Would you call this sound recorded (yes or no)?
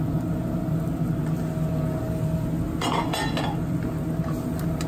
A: yes